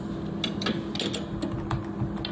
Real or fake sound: real